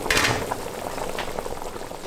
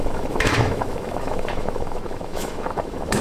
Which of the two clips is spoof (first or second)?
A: second